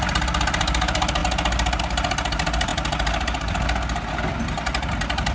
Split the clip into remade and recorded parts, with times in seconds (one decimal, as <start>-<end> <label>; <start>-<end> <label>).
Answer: 0.0-5.3 recorded

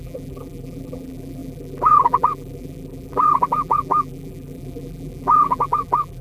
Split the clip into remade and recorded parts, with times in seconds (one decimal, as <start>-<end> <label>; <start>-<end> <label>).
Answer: 0.0-6.2 remade

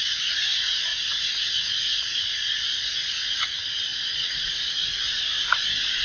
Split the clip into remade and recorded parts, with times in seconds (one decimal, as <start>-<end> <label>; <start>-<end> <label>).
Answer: 0.0-0.9 remade; 0.9-3.4 recorded; 3.4-3.9 remade; 3.9-4.4 recorded; 4.4-6.0 remade

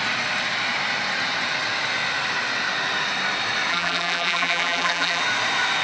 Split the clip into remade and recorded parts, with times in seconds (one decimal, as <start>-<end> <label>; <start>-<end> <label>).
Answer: 0.0-3.7 recorded; 3.7-5.2 remade; 5.2-5.8 recorded

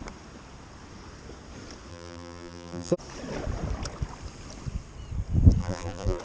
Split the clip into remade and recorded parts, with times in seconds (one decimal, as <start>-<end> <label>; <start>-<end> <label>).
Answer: 0.0-1.9 recorded; 1.9-2.9 remade; 2.9-5.6 recorded; 5.6-6.2 remade